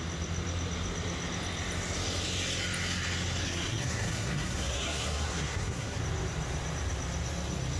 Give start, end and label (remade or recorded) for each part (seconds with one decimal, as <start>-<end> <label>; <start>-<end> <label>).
0.0-3.4 recorded; 3.4-6.0 remade; 6.0-7.8 recorded